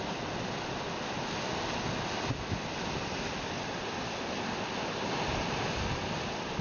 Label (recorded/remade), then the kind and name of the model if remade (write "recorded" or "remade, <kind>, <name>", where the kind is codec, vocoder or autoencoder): recorded